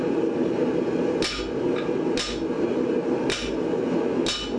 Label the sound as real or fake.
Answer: real